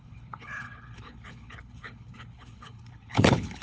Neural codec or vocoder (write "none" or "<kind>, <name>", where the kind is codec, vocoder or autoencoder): codec, HILCodec